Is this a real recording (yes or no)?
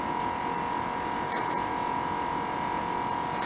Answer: yes